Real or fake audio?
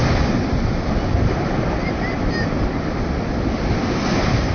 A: real